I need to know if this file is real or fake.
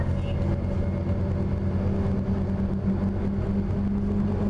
real